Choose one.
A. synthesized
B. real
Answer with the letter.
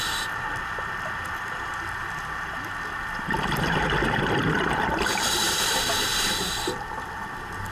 A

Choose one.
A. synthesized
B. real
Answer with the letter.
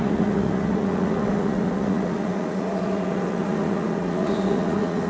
A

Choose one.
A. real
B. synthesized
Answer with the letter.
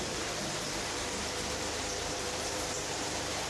B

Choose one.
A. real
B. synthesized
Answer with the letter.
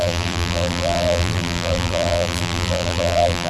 B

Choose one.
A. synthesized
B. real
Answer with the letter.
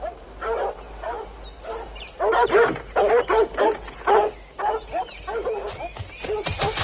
B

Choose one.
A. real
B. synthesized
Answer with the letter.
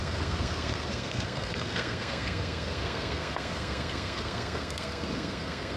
B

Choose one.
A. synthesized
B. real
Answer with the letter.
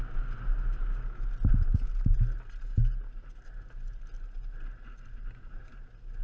B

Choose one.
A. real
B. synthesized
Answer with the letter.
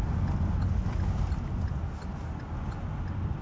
A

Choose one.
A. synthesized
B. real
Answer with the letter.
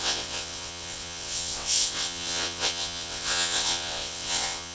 A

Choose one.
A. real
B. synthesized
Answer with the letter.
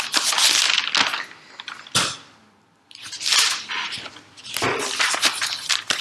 A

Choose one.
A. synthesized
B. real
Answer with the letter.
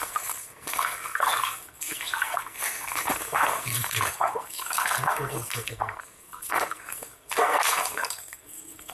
A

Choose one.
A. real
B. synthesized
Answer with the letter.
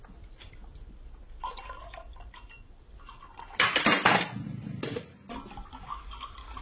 A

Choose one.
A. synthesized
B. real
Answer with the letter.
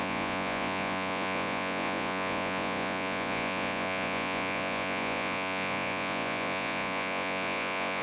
A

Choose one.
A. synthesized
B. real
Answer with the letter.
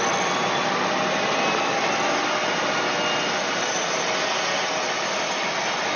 B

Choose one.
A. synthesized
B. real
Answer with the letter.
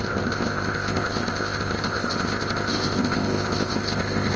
A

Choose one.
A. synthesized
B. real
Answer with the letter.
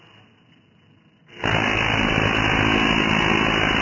B